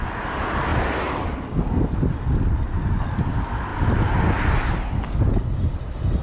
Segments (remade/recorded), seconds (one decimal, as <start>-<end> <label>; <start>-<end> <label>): 0.0-6.2 recorded